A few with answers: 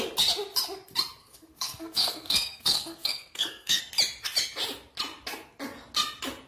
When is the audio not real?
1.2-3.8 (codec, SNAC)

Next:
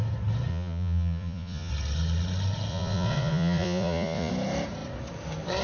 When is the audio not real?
0.5-1.7 (vocoder, Vocos); 2.7-4.3

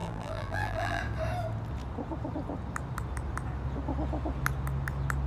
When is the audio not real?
0.0-1.0 (vocoder, BigVGAN v2)

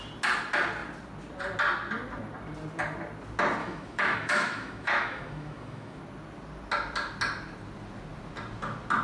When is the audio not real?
3.6-6.0 (autoencoder, DAC-VAE)

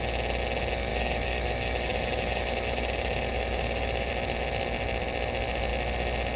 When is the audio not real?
0.9-4.1 (autoencoder, DAC-VAE)

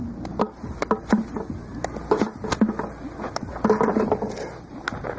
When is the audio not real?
none